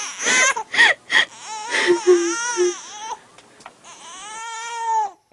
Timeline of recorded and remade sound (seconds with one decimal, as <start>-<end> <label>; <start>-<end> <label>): 0.0-5.3 recorded